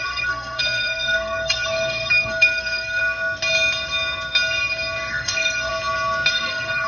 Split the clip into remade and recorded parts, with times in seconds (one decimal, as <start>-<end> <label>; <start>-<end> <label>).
0.0-3.0 remade; 3.0-5.1 recorded; 5.1-5.7 remade; 5.7-6.3 recorded; 6.3-6.9 remade